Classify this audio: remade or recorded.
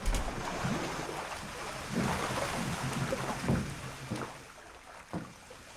recorded